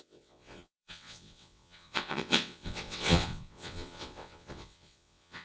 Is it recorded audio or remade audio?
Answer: remade